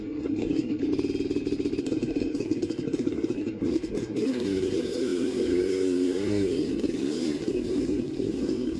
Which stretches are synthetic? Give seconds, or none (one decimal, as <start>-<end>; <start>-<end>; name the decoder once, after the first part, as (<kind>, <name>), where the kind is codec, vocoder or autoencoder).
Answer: 0.0-0.8 (codec, SNAC); 1.8-8.8